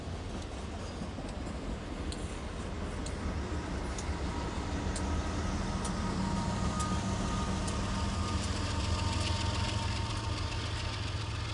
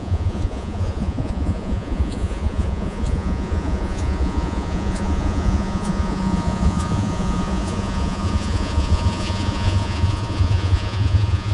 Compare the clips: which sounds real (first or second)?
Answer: first